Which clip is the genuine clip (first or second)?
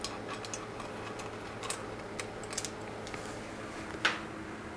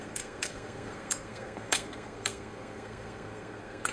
first